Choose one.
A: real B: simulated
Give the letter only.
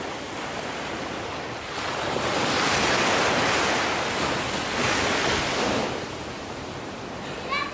A